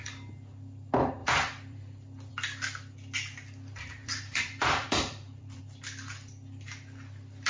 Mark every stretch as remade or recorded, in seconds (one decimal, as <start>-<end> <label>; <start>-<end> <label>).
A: 0.0-1.2 recorded; 1.2-2.3 remade; 2.3-4.0 recorded; 4.0-5.6 remade; 5.6-7.5 recorded